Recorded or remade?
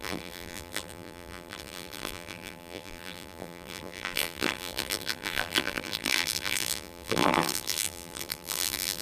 remade